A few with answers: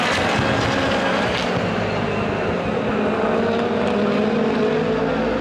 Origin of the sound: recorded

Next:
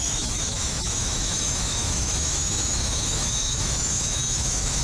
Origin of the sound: remade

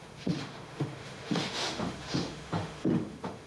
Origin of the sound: remade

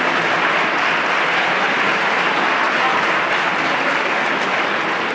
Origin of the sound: recorded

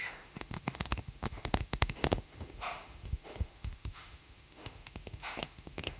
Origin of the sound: remade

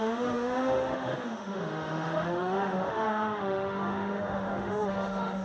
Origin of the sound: remade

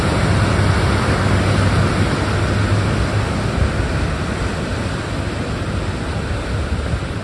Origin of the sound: recorded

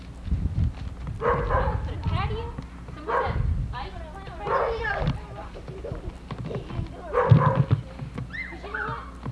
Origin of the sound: recorded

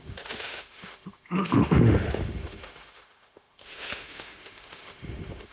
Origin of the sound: remade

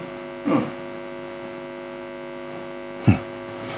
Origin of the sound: recorded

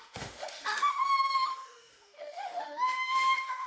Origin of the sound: remade